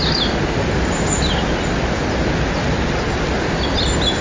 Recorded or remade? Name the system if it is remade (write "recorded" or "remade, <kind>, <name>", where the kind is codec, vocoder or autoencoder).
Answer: recorded